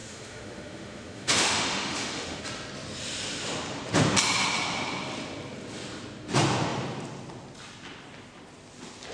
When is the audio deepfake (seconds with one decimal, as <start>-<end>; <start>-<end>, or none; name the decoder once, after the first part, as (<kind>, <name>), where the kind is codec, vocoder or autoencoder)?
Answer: 0.0-2.4 (autoencoder, DAC-VAE)